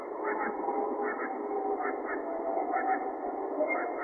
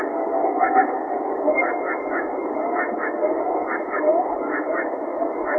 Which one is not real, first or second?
second